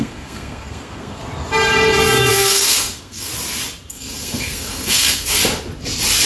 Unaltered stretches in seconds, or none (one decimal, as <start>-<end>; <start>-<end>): 1.2-2.3; 3.3-3.9; 5.4-6.3